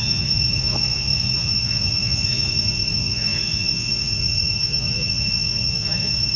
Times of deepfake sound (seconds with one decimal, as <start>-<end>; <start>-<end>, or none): 0.0-6.4

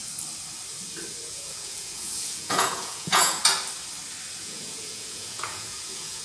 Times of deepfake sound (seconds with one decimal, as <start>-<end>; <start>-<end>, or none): 1.2-3.4; 4.4-6.2

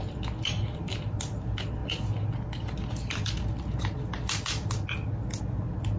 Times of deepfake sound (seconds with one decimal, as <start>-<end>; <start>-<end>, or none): none

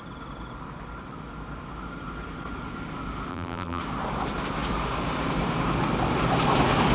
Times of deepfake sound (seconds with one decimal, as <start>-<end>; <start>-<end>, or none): 3.3-3.8